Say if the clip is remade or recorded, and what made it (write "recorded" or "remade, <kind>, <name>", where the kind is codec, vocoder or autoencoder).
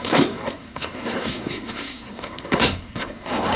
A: remade, codec, SNAC